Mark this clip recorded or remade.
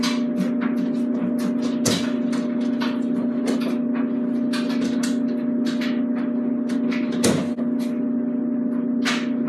recorded